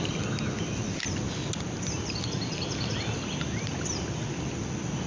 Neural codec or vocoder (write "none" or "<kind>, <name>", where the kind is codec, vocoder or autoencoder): none